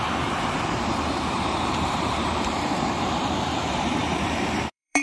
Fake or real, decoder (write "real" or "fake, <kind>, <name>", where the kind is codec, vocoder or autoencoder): fake, vocoder, BigVGAN v2